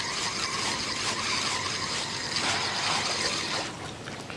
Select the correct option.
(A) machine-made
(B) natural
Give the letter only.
B